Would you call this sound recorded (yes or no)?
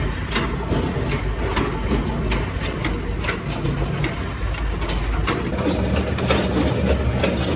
yes